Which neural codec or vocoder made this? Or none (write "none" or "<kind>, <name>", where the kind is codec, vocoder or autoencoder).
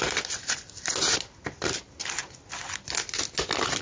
none